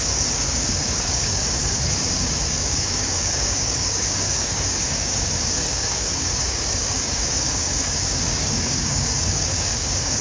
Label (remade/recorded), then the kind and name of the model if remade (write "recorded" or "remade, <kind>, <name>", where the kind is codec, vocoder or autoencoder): remade, codec, DAC